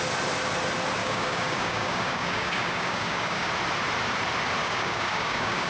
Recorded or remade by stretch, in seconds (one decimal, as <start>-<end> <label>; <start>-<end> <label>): 0.0-1.0 recorded; 1.0-3.5 remade; 3.5-4.6 recorded; 4.6-5.7 remade